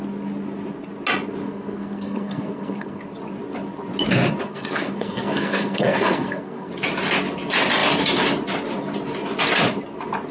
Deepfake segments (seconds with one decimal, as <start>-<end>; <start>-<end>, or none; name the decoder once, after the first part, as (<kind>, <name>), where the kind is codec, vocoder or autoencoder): 1.4-3.0 (codec, SNAC); 4.4-6.7